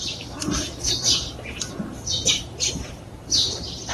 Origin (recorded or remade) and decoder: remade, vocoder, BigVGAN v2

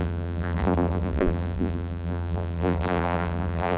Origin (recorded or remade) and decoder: remade, vocoder, BigVGAN v2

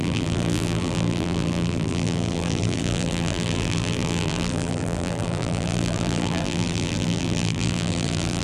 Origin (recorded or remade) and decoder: remade, vocoder, BigVGAN v2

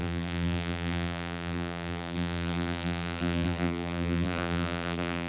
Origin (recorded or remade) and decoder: remade, vocoder, BigVGAN v2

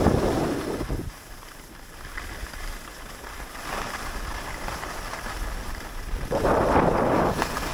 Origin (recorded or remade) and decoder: recorded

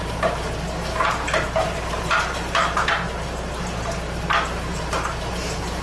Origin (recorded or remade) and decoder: remade, vocoder, BigVGAN v2